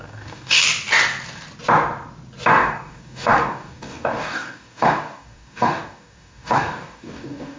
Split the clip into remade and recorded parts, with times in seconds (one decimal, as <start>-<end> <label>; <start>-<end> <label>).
0.0-0.6 remade; 0.6-2.5 recorded; 2.5-7.6 remade